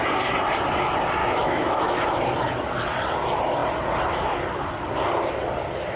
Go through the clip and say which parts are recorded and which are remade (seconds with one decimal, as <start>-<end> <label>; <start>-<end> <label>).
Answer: 0.0-1.2 recorded; 1.2-2.2 remade; 2.2-6.0 recorded